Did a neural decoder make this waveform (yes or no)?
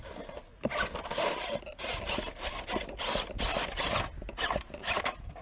no